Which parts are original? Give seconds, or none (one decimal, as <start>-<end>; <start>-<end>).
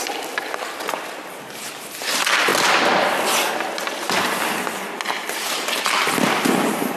0.0-7.0